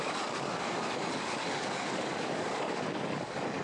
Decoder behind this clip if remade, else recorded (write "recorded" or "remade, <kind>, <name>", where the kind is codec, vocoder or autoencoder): remade, codec, DAC